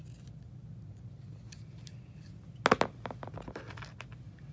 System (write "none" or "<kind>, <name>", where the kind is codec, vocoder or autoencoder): none